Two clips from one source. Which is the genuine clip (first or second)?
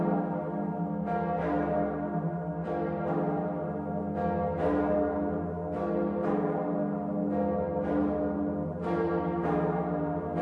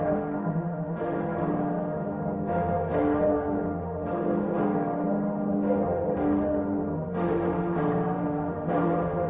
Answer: first